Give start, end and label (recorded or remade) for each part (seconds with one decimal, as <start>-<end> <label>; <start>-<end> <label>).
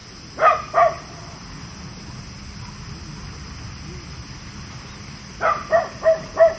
0.0-6.6 recorded